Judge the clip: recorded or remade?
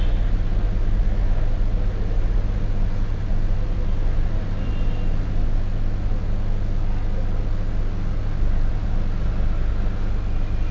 recorded